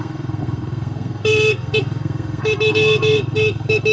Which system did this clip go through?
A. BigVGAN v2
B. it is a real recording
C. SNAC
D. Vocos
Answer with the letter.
C